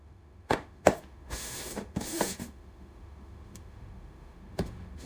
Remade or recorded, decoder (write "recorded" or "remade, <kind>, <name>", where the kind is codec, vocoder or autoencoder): remade, autoencoder, DAC-VAE